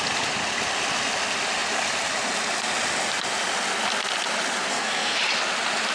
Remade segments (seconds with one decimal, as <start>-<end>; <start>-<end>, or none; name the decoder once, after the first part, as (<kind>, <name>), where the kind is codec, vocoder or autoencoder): 4.7-5.2 (codec, SNAC)